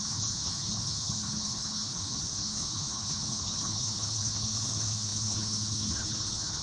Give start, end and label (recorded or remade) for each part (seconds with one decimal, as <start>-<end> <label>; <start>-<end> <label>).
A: 0.0-6.6 remade